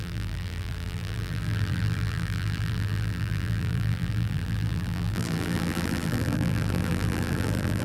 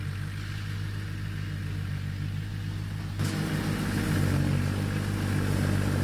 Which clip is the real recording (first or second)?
second